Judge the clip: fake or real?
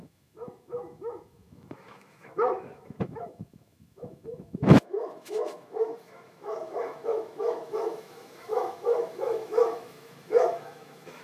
fake